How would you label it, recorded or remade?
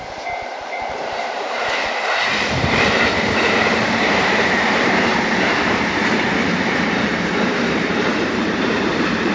remade